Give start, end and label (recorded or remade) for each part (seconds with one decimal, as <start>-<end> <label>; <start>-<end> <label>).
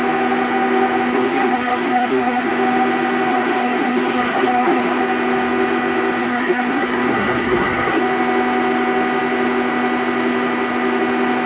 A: 0.0-1.1 recorded; 1.1-2.5 remade; 2.5-3.3 recorded; 3.3-5.0 remade; 5.0-6.2 recorded; 6.2-8.0 remade; 8.0-11.5 recorded